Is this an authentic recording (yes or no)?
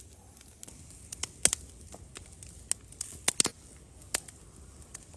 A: yes